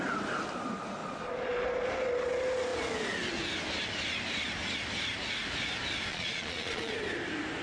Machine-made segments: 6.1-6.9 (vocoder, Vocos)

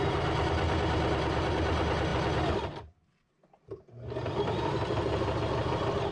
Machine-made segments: none

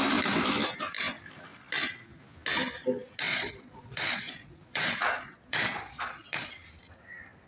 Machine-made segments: 3.3-6.5 (vocoder, Vocos)

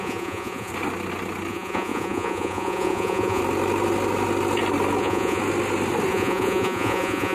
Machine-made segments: 0.0-0.7 (vocoder, Vocos); 1.5-3.4; 5.0-5.4; 6.1-7.3

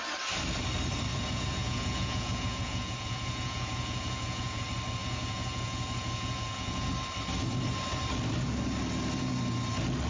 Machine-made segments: 1.1-4.6 (vocoder, Vocos); 5.0-6.9